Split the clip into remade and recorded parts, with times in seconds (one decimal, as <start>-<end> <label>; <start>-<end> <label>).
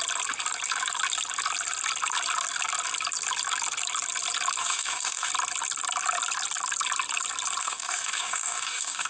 0.0-4.6 recorded; 4.6-5.3 remade; 5.3-7.6 recorded; 7.6-9.1 remade